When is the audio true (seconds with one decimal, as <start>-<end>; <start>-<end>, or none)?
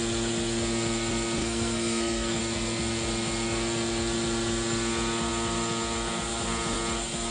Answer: 0.0-1.4; 2.4-7.3